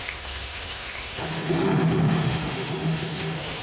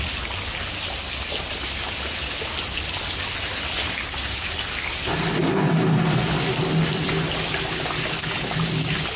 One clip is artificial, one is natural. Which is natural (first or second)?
second